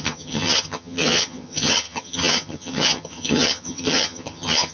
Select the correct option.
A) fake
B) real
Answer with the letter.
A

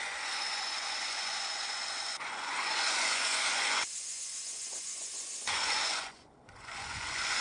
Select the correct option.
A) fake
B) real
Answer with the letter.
A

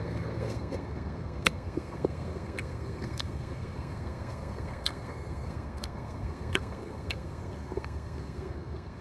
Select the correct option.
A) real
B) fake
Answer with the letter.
B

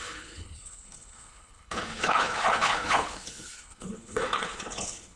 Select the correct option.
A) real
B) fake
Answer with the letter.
B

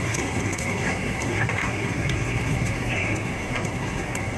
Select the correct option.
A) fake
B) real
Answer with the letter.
A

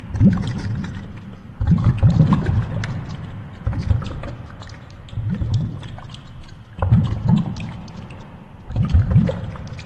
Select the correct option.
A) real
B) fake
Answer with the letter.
A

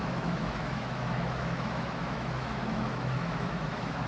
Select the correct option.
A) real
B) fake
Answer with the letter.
B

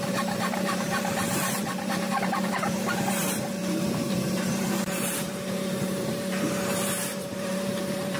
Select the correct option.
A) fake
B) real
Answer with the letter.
A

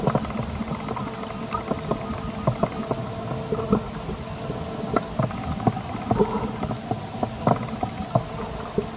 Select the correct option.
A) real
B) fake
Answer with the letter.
A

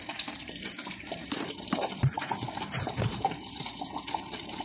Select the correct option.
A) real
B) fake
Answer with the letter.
B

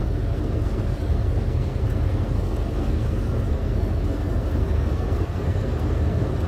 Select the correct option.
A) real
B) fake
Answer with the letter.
B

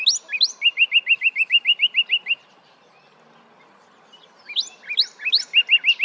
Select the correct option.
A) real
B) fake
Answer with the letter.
A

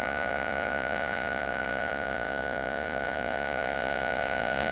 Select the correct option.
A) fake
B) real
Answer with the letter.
A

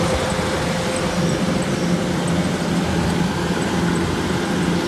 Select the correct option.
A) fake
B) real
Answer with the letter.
B